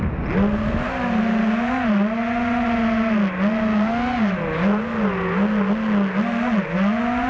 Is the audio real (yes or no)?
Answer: yes